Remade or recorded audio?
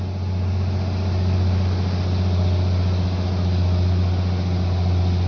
recorded